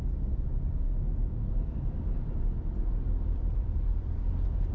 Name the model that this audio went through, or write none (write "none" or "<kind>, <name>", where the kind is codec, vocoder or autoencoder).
vocoder, BigVGAN v2